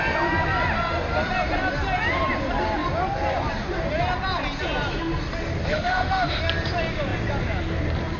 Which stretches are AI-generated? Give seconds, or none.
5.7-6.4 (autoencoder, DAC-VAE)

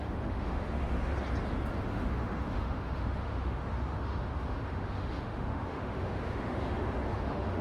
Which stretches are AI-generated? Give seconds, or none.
0.0-1.1 (autoencoder, DAC-VAE); 1.8-7.6

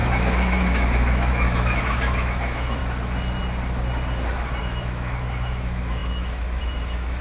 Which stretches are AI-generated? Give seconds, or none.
0.0-2.8 (autoencoder, DAC-VAE); 4.6-7.2

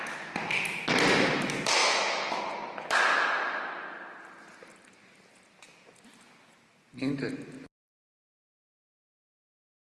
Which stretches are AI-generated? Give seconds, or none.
1.8-2.4 (autoencoder, DAC-VAE)

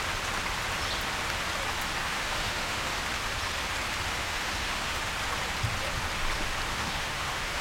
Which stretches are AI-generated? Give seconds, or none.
2.0-3.0 (autoencoder, DAC-VAE); 4.2-5.1; 6.7-7.6

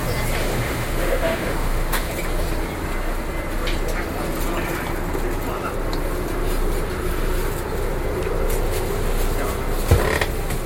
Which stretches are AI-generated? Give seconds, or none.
0.4-2.1 (autoencoder, DAC-VAE)

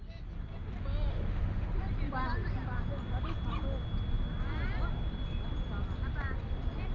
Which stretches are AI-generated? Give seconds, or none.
1.1-1.7 (autoencoder, DAC-VAE)